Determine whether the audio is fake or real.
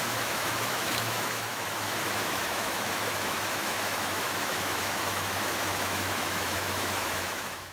fake